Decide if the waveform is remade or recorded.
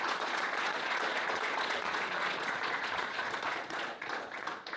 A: remade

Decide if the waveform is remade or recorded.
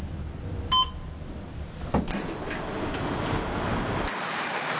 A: recorded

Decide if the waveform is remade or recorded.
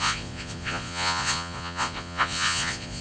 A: remade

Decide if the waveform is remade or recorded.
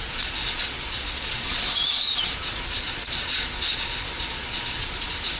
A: remade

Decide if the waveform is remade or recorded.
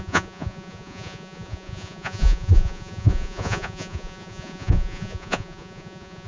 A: remade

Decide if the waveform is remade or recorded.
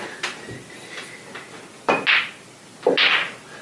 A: recorded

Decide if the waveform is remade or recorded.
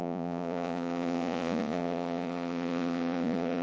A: remade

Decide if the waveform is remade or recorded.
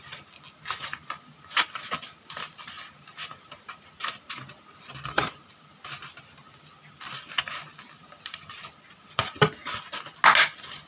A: recorded